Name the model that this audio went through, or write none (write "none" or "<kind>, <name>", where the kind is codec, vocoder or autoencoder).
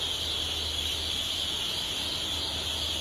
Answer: none